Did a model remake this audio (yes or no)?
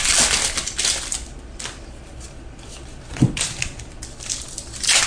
no